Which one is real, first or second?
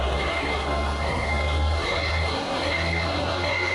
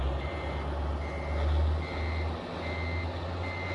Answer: second